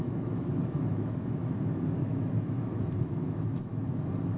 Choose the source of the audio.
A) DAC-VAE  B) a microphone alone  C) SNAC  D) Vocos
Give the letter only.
A